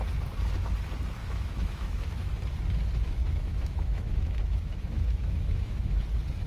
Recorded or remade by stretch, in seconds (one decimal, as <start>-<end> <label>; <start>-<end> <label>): 0.0-1.2 recorded; 1.2-2.3 remade; 2.3-3.2 recorded; 3.2-6.0 remade; 6.0-6.5 recorded